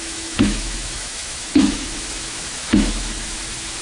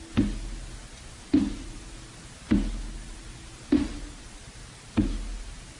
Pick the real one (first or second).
second